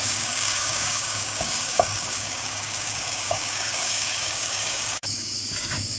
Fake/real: fake